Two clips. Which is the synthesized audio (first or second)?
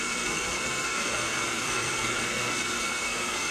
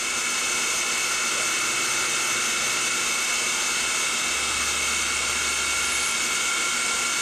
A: first